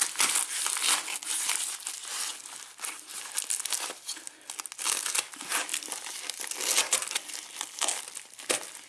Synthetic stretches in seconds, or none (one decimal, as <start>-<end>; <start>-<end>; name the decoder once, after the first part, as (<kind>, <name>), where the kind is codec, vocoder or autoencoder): none